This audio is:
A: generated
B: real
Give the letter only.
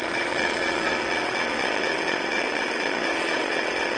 A